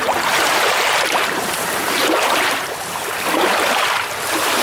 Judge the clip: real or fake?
fake